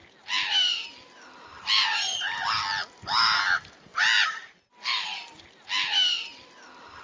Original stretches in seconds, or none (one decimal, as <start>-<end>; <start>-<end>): 0.0-7.0